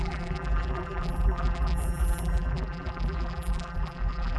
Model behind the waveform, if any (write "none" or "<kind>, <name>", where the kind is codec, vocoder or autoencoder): vocoder, BigVGAN v2